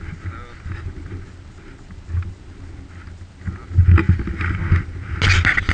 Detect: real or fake real